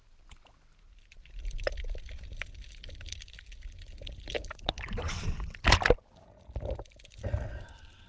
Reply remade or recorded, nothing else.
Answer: recorded